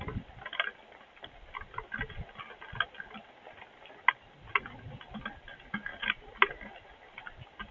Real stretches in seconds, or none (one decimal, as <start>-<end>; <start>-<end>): 0.0-7.7